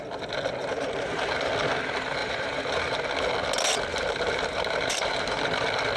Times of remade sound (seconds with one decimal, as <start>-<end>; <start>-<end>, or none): 0.6-1.5; 2.2-3.1; 3.9-5.4